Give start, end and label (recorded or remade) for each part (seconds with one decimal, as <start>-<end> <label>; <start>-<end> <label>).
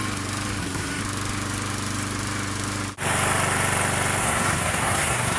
0.0-0.6 recorded; 0.6-1.0 remade; 1.0-4.2 recorded; 4.2-5.4 remade